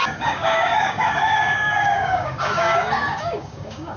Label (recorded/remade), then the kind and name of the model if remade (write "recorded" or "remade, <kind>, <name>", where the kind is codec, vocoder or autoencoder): remade, codec, DAC